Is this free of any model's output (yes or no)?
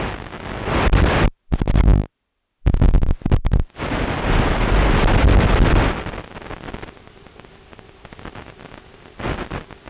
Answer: yes